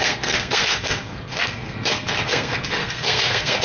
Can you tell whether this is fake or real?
fake